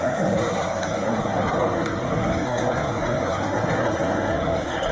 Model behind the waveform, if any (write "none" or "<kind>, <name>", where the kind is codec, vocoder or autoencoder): codec, SNAC